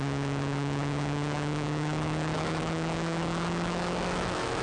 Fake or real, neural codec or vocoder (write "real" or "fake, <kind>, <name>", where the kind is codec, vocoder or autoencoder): fake, autoencoder, DAC-VAE